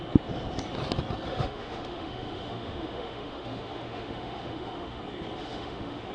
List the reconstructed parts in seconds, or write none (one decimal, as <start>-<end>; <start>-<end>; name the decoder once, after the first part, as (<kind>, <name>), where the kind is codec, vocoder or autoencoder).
1.3-5.0 (autoencoder, DAC-VAE); 5.4-6.1